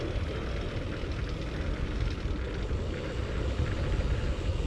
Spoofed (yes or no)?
no